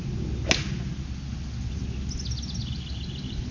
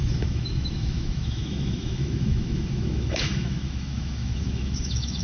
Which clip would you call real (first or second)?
first